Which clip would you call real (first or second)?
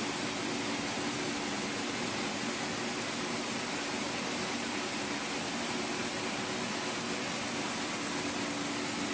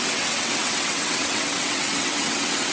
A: first